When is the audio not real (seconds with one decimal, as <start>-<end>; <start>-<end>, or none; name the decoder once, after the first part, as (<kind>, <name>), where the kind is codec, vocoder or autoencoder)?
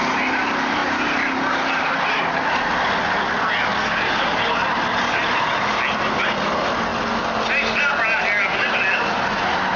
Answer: 0.8-2.3 (vocoder, BigVGAN v2); 3.7-4.3